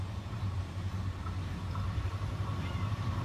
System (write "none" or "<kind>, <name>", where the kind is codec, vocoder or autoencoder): vocoder, BigVGAN v2